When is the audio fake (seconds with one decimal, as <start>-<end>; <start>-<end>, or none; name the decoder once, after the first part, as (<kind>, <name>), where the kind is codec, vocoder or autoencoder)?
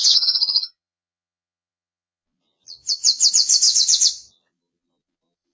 0.0-5.5 (vocoder, Vocos)